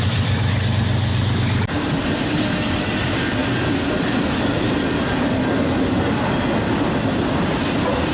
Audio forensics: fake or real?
real